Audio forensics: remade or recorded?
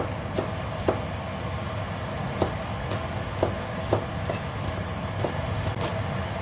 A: recorded